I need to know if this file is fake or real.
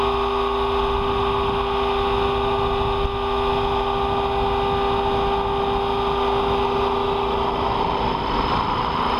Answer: real